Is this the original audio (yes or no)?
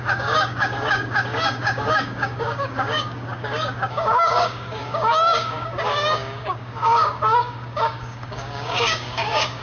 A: no